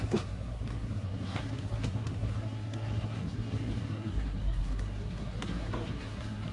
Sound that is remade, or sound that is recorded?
remade